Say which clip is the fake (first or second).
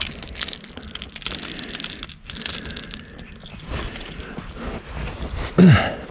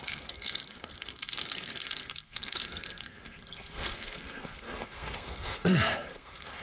second